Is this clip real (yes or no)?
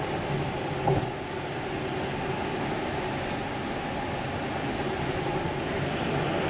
yes